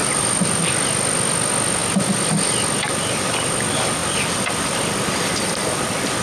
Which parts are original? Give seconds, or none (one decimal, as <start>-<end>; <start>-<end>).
0.6-4.0; 5.8-6.2